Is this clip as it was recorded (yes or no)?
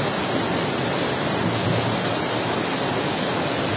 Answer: yes